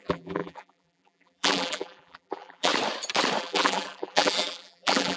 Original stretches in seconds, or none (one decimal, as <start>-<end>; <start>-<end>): 2.7-3.4